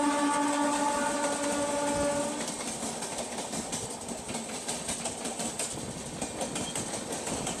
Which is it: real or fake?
real